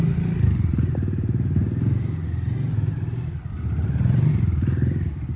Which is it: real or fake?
real